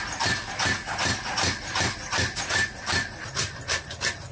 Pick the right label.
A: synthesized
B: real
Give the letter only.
B